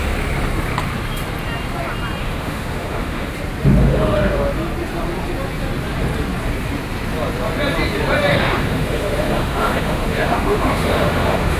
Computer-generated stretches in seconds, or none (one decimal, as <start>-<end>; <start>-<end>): 2.2-3.3; 3.8-4.4; 8.3-11.6